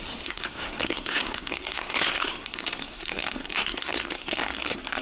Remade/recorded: remade